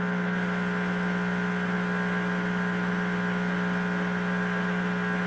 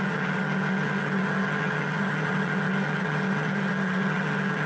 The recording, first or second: first